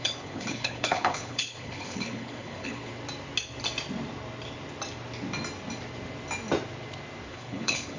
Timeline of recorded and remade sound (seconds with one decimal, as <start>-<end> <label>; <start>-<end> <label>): 0.0-2.9 remade; 2.9-7.3 recorded; 7.3-8.0 remade